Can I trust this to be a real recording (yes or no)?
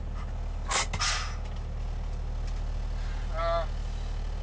yes